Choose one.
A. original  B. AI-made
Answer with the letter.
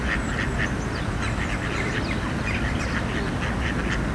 A